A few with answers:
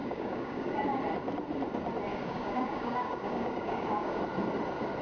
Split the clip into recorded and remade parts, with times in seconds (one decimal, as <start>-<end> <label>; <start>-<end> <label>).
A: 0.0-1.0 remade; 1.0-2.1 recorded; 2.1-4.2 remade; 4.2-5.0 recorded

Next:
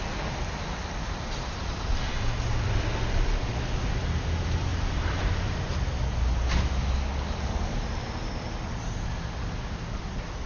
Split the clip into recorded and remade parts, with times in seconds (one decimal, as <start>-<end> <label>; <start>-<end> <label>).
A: 0.0-10.5 recorded

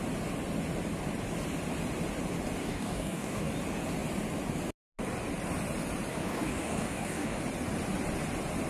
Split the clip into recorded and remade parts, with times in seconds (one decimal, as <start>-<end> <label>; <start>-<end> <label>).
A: 0.0-2.6 recorded; 2.6-3.5 remade; 3.5-6.1 recorded; 6.1-7.4 remade; 7.4-8.7 recorded

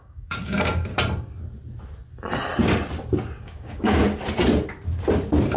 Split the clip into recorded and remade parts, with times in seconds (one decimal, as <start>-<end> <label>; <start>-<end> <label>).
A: 0.0-0.9 remade; 0.9-3.4 recorded; 3.4-4.0 remade; 4.0-5.6 recorded

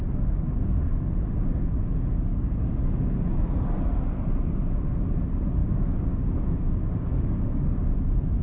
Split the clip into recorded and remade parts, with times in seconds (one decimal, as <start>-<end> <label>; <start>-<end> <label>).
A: 0.0-2.3 recorded; 2.3-3.0 remade; 3.0-5.6 recorded; 5.6-7.9 remade; 7.9-8.4 recorded

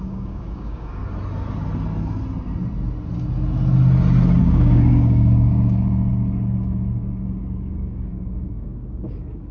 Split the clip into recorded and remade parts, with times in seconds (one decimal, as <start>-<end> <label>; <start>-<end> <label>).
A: 0.0-1.0 remade; 1.0-4.4 recorded; 4.4-9.5 remade

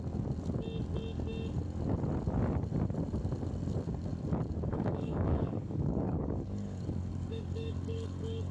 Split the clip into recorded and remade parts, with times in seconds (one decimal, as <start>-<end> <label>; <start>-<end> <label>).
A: 0.0-4.7 recorded; 4.7-8.5 remade